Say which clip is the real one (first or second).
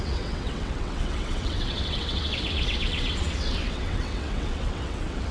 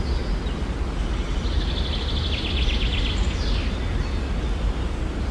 second